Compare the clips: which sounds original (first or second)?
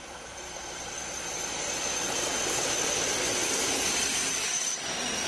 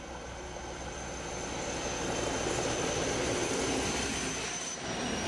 second